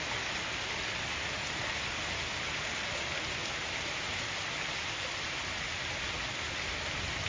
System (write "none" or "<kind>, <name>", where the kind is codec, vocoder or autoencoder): none